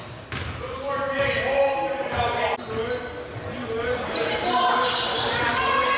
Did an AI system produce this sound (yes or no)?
no